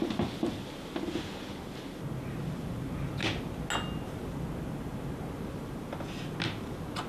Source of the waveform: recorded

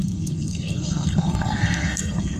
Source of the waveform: remade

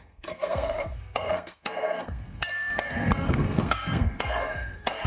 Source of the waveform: remade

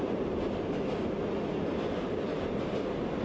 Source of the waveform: recorded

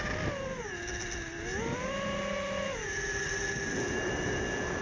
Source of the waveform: recorded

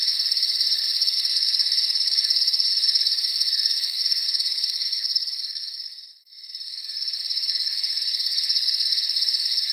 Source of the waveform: remade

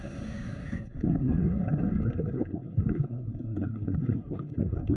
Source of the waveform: remade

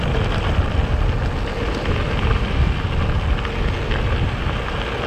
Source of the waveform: recorded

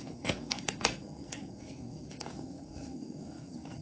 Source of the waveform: remade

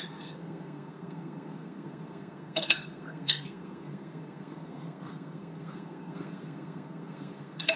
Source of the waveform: remade